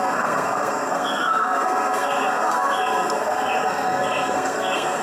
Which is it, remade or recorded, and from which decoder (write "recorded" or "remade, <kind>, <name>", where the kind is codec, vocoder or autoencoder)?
remade, codec, SNAC